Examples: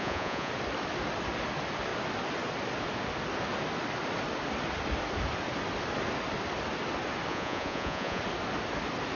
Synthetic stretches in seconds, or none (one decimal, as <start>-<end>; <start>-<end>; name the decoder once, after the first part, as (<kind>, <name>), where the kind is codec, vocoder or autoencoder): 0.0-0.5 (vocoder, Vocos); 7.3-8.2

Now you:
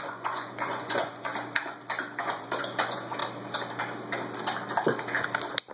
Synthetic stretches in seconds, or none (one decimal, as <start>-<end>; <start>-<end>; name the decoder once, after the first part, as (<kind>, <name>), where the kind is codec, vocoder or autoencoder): 0.0-1.3 (vocoder, Vocos); 2.2-3.2

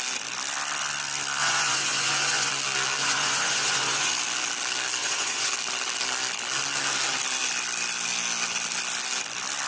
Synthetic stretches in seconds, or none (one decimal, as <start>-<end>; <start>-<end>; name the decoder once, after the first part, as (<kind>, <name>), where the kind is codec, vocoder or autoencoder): 1.4-2.5 (vocoder, Vocos); 3.0-4.1; 5.0-5.5

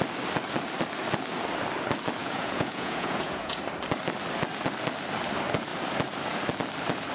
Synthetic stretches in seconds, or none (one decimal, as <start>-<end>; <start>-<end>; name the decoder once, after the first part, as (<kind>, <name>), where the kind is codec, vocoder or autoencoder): 2.2-3.6 (vocoder, Vocos)

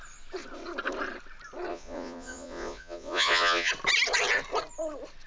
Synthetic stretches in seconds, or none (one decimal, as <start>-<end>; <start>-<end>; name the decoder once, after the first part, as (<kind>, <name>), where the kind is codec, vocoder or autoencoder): 1.7-3.7 (vocoder, Vocos)

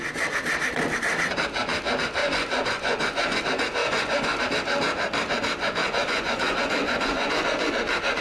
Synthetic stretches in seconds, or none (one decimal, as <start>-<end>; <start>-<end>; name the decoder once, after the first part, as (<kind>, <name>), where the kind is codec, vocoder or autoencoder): 2.2-3.4 (vocoder, Vocos); 3.8-4.4; 5.8-7.7